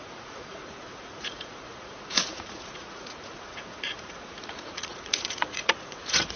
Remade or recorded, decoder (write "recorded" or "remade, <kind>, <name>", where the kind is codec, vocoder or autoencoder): remade, vocoder, Vocos